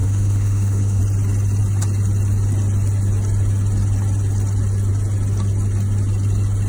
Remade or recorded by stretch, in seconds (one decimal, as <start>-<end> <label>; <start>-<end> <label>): 0.0-1.0 remade; 1.0-6.7 recorded